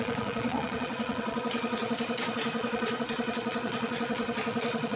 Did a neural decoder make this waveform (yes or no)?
yes